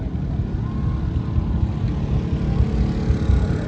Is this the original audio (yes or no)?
yes